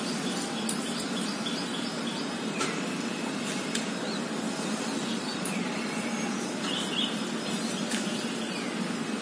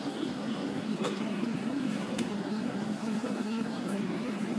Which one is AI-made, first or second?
second